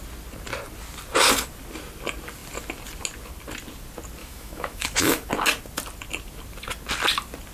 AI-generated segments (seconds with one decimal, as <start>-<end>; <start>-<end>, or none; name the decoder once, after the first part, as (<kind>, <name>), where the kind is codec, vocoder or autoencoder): 4.2-5.3 (autoencoder, DAC-VAE)